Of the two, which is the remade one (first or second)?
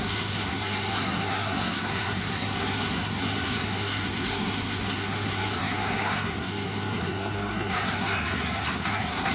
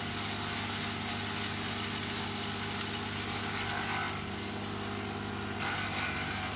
first